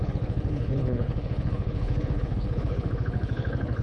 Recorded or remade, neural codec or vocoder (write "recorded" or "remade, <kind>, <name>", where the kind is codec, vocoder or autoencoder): remade, codec, HILCodec